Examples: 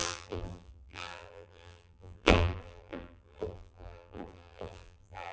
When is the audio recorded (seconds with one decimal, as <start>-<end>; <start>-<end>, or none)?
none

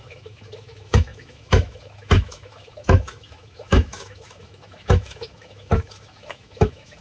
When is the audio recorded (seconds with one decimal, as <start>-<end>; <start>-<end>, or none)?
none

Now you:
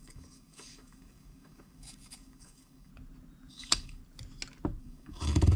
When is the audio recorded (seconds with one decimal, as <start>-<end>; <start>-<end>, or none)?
2.9-3.5; 4.0-4.8

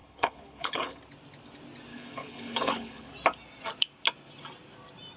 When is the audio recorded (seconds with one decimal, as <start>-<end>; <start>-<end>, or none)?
1.0-1.9; 3.1-5.2

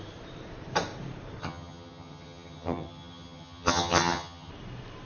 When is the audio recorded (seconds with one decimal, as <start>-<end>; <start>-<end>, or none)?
0.0-1.4; 4.5-5.1